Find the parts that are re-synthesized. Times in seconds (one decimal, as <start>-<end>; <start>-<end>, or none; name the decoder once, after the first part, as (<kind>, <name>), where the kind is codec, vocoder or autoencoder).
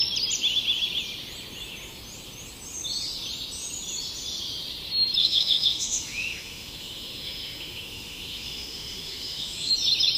5.2-9.7 (autoencoder, DAC-VAE)